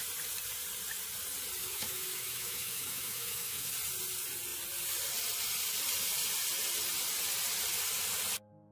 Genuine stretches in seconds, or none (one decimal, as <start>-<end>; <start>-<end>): 0.0-1.6; 3.7-8.7